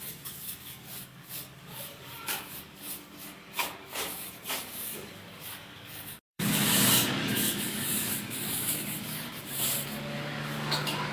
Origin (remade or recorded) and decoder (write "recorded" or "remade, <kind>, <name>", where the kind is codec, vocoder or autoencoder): remade, codec, DAC